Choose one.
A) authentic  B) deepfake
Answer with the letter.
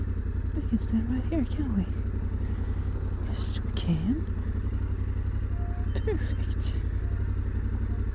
A